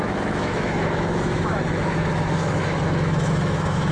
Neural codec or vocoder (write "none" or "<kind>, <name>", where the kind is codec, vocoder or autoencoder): autoencoder, DAC-VAE